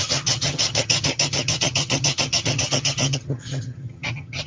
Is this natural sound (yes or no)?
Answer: no